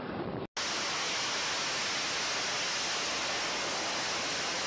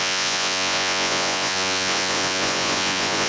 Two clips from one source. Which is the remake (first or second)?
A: second